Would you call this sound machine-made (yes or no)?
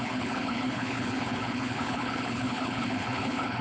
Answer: yes